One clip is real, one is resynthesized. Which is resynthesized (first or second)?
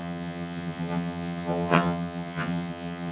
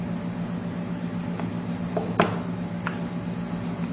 first